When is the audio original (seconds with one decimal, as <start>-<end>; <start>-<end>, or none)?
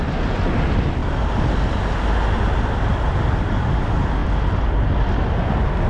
0.0-1.0; 1.9-5.9